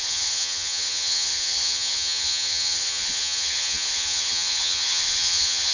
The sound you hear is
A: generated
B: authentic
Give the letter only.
A